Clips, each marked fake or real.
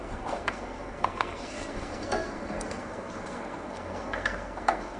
fake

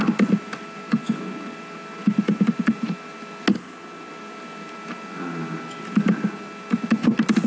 real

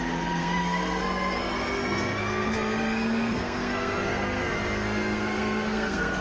fake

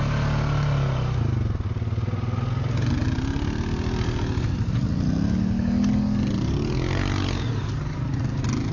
real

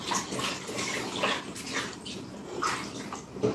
real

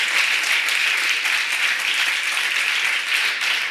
real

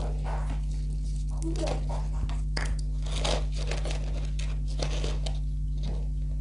real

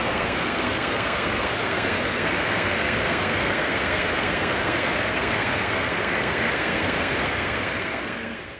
fake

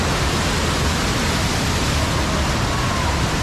real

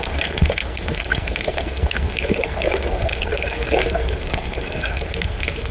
fake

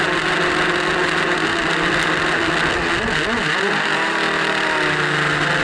real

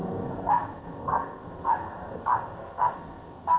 fake